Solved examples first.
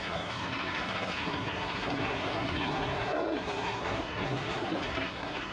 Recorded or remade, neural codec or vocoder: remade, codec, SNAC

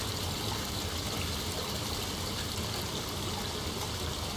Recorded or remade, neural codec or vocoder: recorded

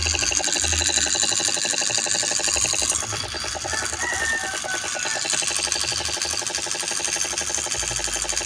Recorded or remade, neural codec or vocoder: recorded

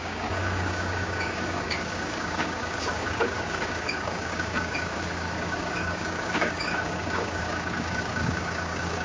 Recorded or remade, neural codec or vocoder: remade, codec, DAC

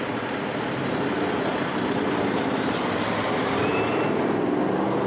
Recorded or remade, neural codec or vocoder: recorded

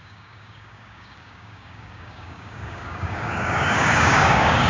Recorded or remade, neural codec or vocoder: remade, codec, DAC